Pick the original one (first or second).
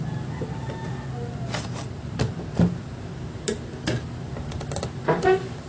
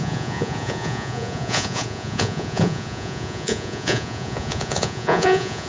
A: first